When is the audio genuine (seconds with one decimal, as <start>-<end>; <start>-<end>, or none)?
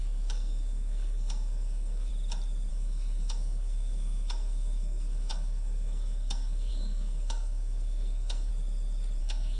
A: 2.1-2.7; 8.5-9.2